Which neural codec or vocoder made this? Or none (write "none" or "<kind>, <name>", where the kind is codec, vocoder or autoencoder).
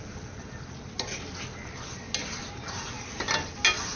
none